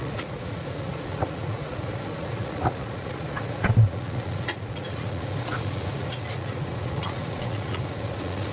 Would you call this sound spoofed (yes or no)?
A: yes